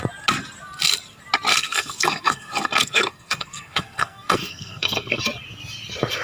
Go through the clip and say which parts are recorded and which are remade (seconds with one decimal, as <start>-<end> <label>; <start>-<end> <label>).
0.0-1.5 recorded; 1.5-5.2 remade; 5.2-6.2 recorded